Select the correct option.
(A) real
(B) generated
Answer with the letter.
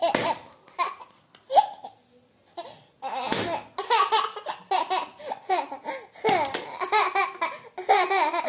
A